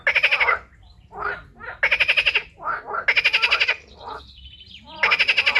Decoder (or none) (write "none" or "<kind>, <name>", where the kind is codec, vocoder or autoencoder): none